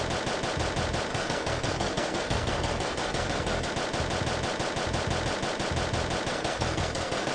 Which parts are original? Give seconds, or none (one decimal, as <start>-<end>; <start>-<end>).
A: 0.0-1.1; 3.7-6.3